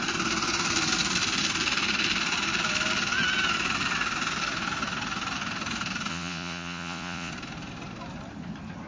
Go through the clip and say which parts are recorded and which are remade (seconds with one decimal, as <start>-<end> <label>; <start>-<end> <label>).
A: 0.0-6.1 recorded; 6.1-7.3 remade; 7.3-8.9 recorded